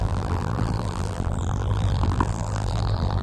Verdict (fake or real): fake